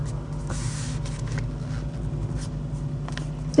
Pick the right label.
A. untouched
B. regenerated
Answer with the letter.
A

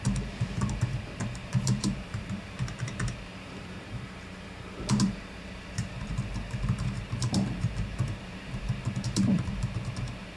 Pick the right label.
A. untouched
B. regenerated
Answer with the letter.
B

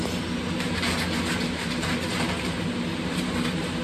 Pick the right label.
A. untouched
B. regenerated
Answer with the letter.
A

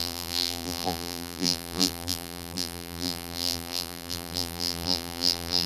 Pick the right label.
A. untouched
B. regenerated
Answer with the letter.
B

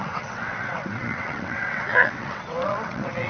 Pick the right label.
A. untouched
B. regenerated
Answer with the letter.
B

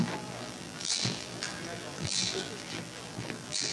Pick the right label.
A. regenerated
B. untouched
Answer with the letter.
A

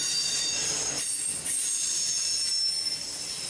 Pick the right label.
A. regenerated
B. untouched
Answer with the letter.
B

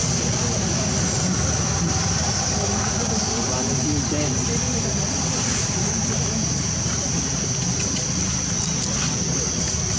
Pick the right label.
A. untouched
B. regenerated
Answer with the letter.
A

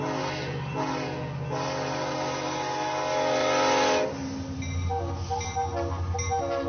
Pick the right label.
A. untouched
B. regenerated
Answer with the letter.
A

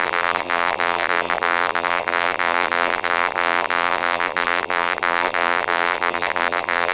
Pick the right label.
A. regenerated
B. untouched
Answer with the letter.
A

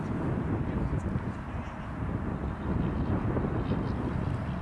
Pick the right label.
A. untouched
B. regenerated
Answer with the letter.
A